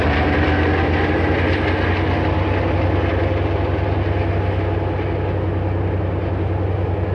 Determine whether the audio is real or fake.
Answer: real